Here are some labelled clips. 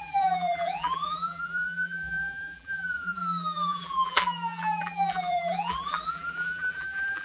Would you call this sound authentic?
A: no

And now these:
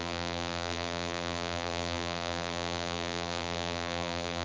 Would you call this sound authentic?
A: no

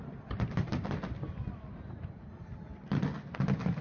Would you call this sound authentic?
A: yes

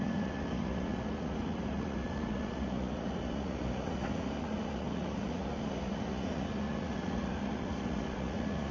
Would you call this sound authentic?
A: no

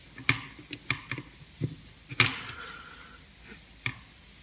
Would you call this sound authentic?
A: yes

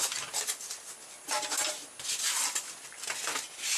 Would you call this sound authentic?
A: yes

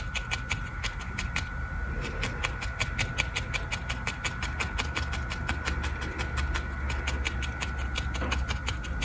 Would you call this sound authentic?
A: yes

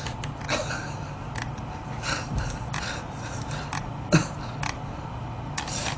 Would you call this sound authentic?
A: yes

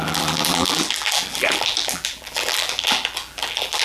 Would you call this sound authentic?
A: no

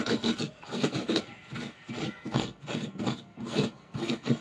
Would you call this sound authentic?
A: no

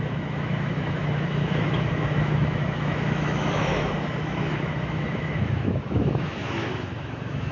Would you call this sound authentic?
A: no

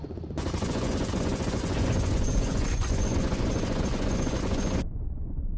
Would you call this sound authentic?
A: no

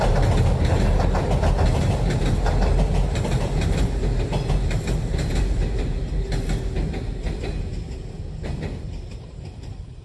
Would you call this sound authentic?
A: yes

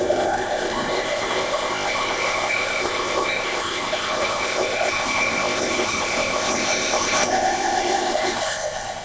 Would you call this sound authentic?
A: no